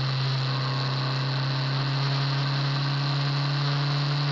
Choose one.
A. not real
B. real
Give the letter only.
B